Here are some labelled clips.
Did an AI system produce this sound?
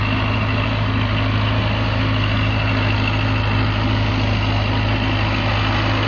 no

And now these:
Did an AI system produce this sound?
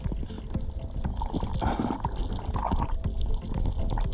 no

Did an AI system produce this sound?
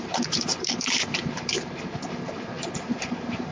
yes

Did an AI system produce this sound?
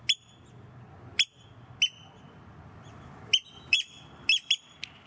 no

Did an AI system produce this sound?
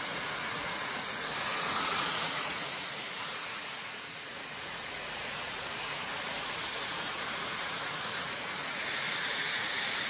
yes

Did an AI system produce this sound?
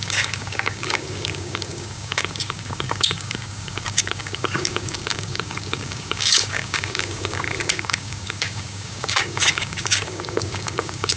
yes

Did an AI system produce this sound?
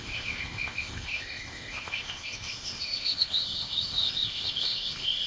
yes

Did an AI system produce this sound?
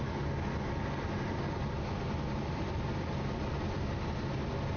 no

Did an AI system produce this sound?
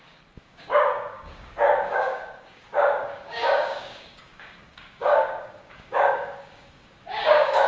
yes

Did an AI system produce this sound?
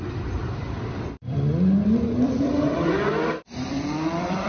yes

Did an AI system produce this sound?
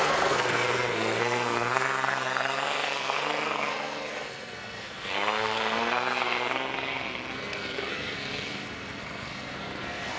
yes